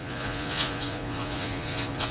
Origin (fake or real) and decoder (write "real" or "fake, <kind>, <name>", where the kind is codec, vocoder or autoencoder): fake, vocoder, Vocos